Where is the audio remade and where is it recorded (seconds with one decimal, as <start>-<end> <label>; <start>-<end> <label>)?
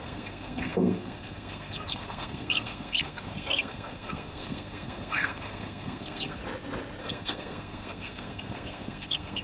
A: 0.0-6.4 remade; 6.4-7.0 recorded; 7.0-9.4 remade